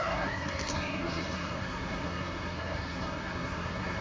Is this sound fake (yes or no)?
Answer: yes